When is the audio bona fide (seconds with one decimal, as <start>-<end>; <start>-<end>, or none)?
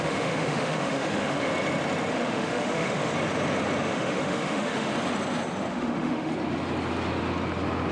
1.5-2.1; 3.1-3.9; 4.9-5.7; 6.3-7.9